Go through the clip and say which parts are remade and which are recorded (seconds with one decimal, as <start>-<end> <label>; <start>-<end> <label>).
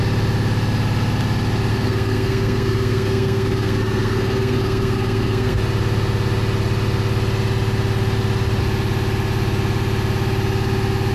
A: 0.0-1.7 recorded; 1.7-5.6 remade; 5.6-11.1 recorded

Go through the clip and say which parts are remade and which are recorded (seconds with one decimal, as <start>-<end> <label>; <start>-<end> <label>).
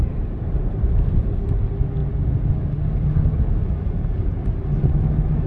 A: 0.0-0.8 remade; 0.8-5.5 recorded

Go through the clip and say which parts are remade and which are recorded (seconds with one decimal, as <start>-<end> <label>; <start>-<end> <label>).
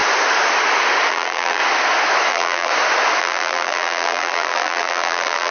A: 0.0-1.1 recorded; 1.1-1.6 remade; 1.6-2.3 recorded; 2.3-2.7 remade; 2.7-3.2 recorded; 3.2-5.5 remade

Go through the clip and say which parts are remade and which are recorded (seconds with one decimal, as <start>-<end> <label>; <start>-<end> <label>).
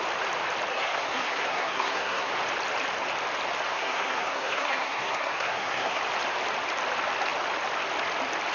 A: 0.0-0.7 recorded; 0.7-2.3 remade; 2.3-3.7 recorded; 3.7-6.0 remade; 6.0-8.5 recorded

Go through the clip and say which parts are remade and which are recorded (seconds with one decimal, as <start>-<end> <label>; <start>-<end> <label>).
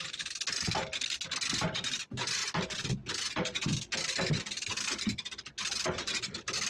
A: 0.0-2.4 recorded; 2.4-4.3 remade; 4.3-6.7 recorded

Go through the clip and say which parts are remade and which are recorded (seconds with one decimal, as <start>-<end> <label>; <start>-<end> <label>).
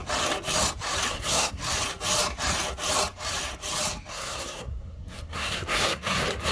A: 0.0-1.1 recorded; 1.1-1.6 remade; 1.6-4.1 recorded; 4.1-6.5 remade